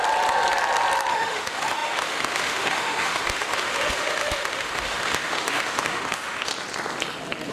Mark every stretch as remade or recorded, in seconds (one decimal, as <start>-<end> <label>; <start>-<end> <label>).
0.0-1.1 recorded; 1.1-6.5 remade; 6.5-7.5 recorded